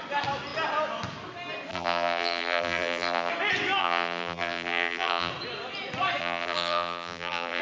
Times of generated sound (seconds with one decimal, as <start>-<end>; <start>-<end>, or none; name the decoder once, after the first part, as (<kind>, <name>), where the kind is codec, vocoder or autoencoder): 1.7-3.3 (vocoder, BigVGAN v2); 3.8-5.3; 6.2-7.6